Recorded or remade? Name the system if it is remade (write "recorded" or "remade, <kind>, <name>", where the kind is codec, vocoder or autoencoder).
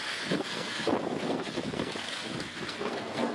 remade, codec, SNAC